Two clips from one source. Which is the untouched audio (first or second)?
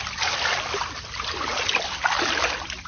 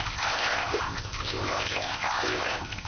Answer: first